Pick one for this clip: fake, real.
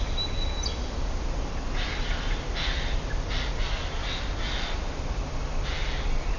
real